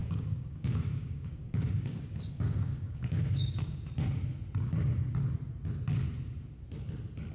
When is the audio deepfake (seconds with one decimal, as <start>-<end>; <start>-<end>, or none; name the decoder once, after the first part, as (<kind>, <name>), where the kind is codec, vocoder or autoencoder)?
0.0-3.9 (codec, DAC)